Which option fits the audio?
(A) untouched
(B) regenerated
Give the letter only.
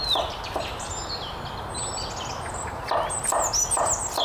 A